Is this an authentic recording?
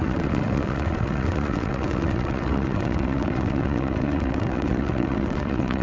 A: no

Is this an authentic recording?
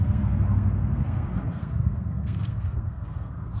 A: no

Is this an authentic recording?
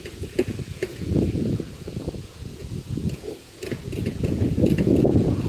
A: no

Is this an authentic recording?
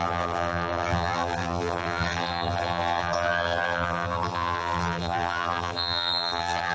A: no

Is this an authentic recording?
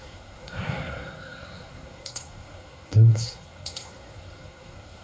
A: no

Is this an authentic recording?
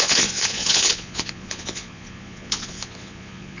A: no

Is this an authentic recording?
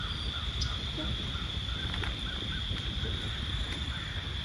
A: no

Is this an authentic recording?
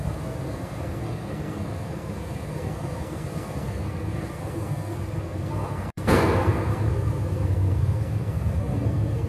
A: no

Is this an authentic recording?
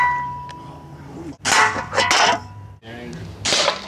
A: yes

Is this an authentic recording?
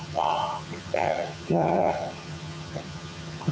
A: no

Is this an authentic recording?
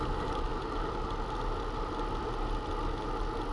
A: yes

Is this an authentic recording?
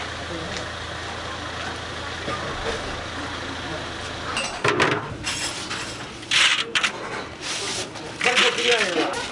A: yes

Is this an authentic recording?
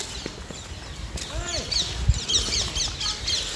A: yes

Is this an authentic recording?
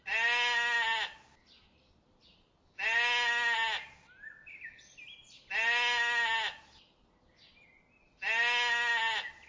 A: yes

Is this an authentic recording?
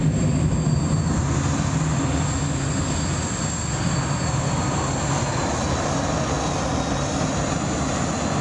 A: yes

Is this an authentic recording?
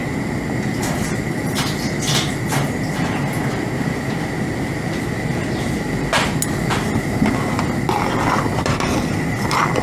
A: yes